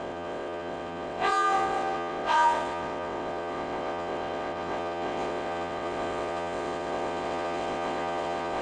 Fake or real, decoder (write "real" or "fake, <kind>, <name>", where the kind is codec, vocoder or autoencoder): fake, vocoder, WaveNeXt